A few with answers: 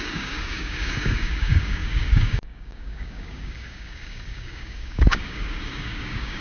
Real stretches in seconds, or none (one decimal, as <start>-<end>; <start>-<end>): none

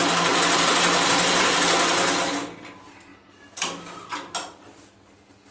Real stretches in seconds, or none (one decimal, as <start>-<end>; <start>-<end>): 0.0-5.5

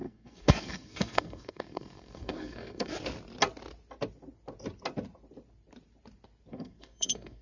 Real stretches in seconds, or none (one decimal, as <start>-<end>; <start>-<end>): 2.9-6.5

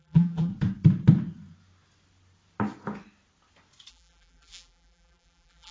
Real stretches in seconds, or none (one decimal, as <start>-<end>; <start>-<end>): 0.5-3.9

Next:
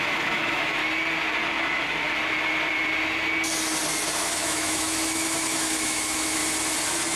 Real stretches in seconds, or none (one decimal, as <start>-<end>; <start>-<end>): 0.8-4.2; 6.4-7.2

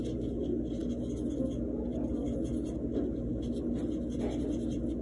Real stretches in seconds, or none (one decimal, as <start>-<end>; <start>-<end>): 0.0-5.0

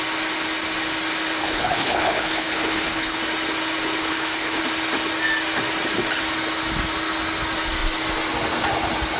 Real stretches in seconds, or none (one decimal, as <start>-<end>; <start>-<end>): 0.0-1.4; 3.2-4.0; 4.6-9.2